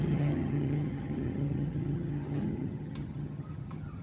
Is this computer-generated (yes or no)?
yes